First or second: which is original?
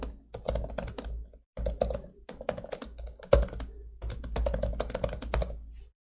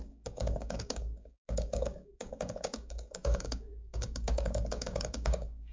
first